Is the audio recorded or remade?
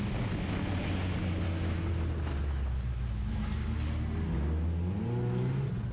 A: recorded